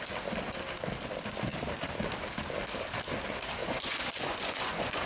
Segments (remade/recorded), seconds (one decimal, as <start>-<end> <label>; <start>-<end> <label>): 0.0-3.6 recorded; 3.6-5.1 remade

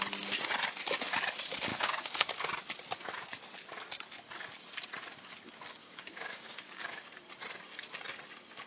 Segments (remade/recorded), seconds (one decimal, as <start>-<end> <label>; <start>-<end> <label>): 0.0-1.7 recorded; 1.7-2.4 remade; 2.4-5.8 recorded; 5.8-7.0 remade; 7.0-8.7 recorded

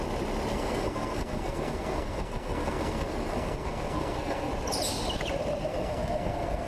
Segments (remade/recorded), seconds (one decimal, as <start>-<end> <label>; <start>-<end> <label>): 0.0-0.5 recorded; 0.5-4.5 remade; 4.5-5.7 recorded; 5.7-6.7 remade

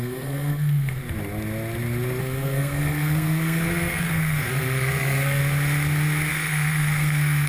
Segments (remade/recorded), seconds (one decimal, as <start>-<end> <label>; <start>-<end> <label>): 0.0-1.0 remade; 1.0-2.2 recorded; 2.2-5.4 remade; 5.4-6.3 recorded; 6.3-7.5 remade

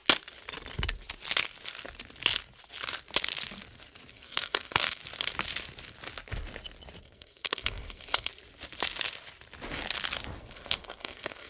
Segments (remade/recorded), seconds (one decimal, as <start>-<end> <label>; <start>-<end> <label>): 0.0-4.1 recorded; 4.1-5.0 remade; 5.0-7.0 recorded; 7.0-8.3 remade; 8.3-10.4 recorded; 10.4-11.5 remade